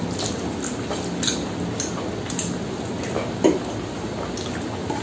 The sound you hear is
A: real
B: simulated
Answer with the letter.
A